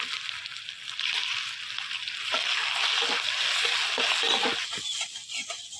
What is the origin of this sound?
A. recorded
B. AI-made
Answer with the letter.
A